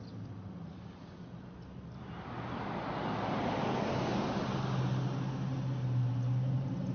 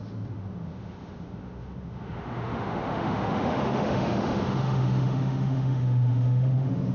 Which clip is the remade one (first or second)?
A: second